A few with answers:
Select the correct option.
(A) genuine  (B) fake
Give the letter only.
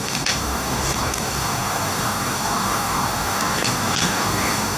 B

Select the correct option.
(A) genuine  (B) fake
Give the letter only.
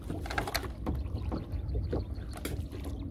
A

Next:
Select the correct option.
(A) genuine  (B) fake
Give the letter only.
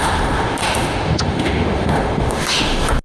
B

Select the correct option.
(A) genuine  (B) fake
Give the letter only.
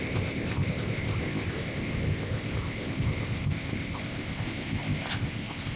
B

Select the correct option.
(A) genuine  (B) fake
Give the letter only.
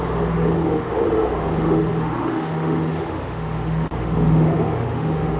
B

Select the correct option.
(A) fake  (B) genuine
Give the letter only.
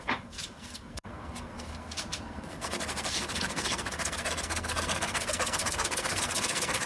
A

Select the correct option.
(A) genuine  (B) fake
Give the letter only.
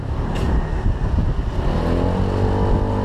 A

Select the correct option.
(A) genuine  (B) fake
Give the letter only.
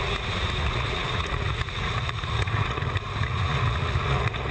B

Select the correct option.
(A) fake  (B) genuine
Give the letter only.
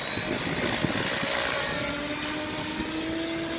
B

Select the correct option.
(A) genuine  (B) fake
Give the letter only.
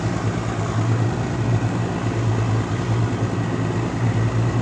A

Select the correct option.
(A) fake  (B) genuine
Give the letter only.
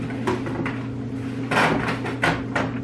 B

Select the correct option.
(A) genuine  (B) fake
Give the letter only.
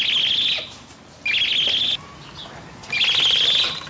A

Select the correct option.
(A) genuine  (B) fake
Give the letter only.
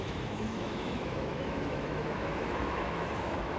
B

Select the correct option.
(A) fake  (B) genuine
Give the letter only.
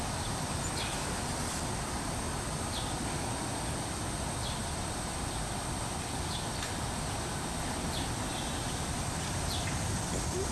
B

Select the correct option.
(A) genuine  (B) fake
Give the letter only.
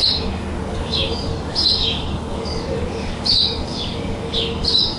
B